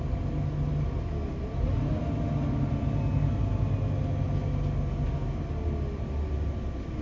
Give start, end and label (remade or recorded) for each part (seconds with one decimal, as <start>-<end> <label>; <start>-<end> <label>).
0.0-1.3 recorded; 1.3-1.9 remade; 1.9-7.0 recorded